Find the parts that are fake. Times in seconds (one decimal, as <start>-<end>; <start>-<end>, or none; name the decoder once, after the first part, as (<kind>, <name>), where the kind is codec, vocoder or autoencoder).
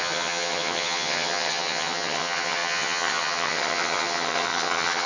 0.0-5.1 (vocoder, HiFi-GAN)